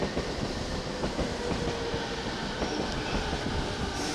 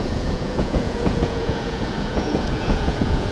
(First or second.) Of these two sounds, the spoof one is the second